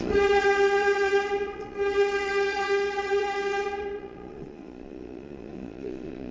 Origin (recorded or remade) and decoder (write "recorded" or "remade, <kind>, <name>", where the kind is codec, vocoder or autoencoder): remade, vocoder, Vocos